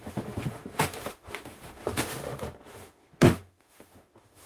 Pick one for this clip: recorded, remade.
remade